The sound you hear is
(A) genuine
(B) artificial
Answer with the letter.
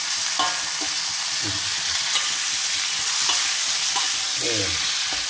A